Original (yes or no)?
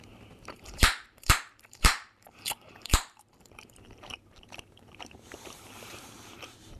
no